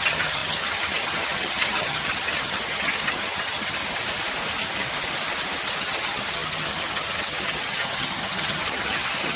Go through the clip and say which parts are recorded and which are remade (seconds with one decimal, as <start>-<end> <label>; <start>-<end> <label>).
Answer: 0.0-3.8 remade; 3.8-5.8 recorded; 5.8-9.4 remade